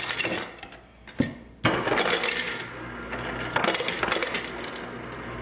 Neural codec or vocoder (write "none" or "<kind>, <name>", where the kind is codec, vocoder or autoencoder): none